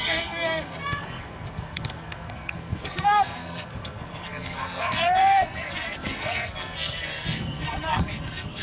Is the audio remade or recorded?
remade